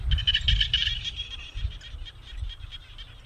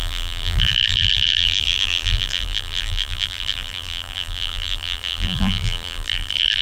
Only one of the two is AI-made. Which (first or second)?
second